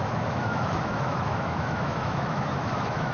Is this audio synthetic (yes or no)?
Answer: yes